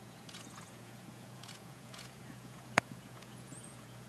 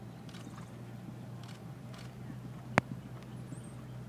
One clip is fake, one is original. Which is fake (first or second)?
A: first